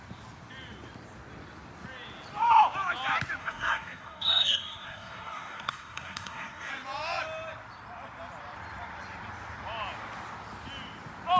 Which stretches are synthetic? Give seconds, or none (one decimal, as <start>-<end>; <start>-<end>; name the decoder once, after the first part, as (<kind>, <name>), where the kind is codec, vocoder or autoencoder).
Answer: 3.4-6.7 (codec, SNAC)